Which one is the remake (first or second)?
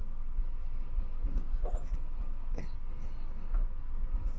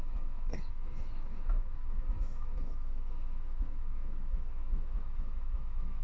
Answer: second